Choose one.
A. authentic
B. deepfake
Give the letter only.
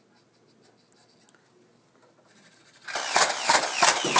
A